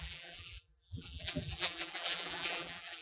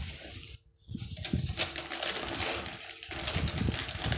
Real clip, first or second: second